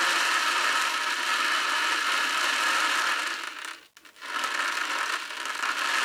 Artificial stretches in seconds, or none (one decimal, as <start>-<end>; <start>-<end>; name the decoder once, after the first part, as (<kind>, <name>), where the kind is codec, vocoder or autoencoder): none